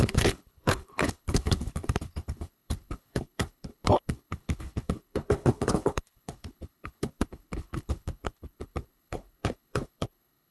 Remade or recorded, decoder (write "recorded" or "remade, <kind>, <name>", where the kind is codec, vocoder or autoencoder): remade, codec, HILCodec